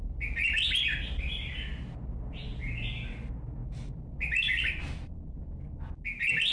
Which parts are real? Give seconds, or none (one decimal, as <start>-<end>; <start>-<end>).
0.0-6.5